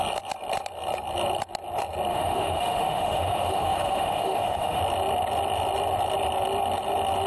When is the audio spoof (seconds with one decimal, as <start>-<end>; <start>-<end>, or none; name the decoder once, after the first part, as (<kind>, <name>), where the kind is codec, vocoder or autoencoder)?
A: 2.1-4.8 (autoencoder, DAC-VAE)